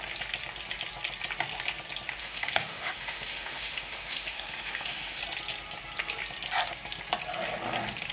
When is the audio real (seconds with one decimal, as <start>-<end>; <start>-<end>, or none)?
0.0-2.2; 5.2-8.1